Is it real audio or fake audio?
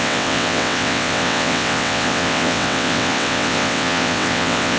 fake